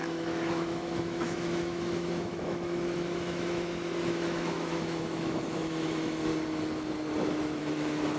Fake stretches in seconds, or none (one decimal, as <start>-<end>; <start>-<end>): 0.0-6.3; 7.6-8.2